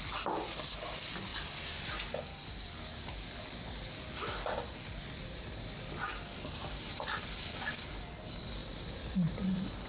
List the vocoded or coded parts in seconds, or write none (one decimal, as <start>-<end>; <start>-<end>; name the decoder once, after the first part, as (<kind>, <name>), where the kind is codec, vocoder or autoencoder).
none